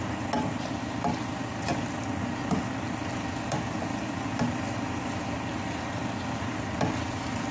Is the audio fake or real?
real